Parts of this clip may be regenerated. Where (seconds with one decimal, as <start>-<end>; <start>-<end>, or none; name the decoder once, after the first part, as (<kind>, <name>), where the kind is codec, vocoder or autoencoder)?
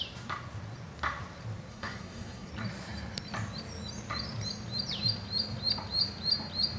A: 1.7-2.5 (codec, SNAC)